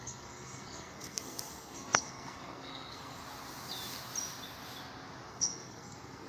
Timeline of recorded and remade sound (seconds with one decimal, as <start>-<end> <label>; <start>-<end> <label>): 0.0-3.2 remade; 3.2-5.3 recorded; 5.3-6.3 remade